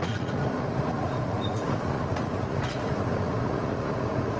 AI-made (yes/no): yes